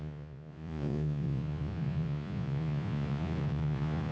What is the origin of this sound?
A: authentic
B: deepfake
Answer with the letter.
B